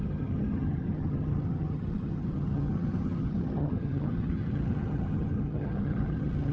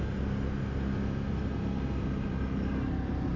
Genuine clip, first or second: second